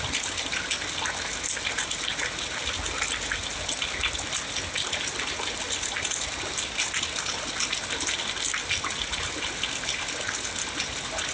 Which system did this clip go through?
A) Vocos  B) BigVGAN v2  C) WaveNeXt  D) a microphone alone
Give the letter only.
D